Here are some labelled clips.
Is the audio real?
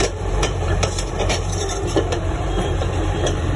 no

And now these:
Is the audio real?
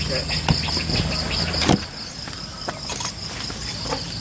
yes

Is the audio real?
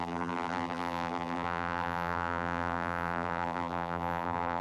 no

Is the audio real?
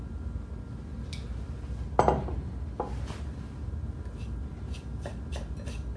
yes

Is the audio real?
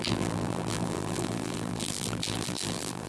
no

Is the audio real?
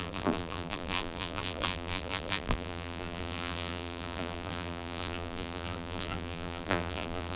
no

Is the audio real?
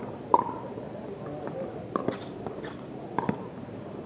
no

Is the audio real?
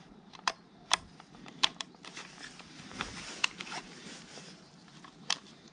no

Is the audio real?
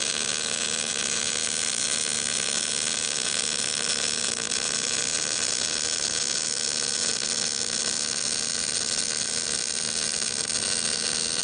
yes